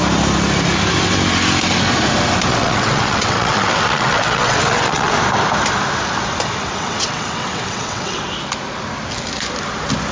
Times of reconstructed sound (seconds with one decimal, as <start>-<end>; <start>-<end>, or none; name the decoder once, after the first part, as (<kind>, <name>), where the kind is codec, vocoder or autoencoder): 2.5-5.1 (vocoder, WaveNeXt); 6.8-8.2

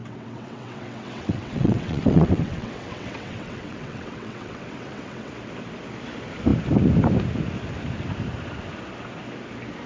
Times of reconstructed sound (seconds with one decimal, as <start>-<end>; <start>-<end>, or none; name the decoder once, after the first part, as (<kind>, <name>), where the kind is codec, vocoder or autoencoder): 0.0-5.3 (vocoder, WaveNeXt)

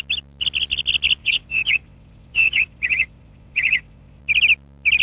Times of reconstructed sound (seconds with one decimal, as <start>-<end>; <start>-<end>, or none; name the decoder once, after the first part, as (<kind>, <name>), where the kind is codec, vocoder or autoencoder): 1.2-4.2 (vocoder, WaveNeXt)

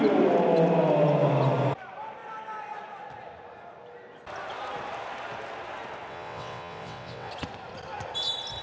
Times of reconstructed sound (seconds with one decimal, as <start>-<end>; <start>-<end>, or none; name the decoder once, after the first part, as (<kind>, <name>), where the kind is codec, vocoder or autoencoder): 6.1-7.3 (vocoder, WaveNeXt)

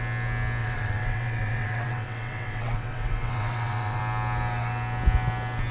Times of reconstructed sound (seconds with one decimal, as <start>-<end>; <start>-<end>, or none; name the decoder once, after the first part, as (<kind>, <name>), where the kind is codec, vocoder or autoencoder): 0.6-4.0 (vocoder, WaveNeXt)

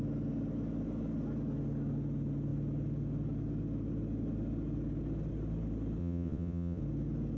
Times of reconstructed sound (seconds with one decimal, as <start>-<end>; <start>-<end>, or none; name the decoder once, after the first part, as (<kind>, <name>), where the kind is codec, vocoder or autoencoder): 6.0-6.8 (vocoder, WaveNeXt)

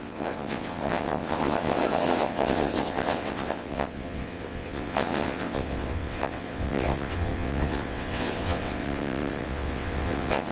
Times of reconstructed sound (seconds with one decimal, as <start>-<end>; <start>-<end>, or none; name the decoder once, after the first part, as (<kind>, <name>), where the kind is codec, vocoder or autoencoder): 0.0-10.5 (vocoder, WaveNeXt)

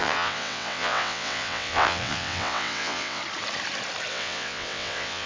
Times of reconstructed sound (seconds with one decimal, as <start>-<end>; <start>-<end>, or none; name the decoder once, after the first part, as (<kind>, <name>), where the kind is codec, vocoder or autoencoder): 0.0-3.2 (vocoder, WaveNeXt); 4.1-5.3